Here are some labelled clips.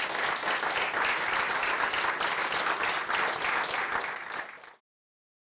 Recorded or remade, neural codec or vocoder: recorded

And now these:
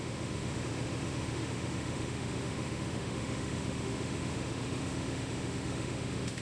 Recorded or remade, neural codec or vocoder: remade, autoencoder, DAC-VAE